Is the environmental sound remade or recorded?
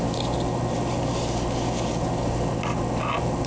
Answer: recorded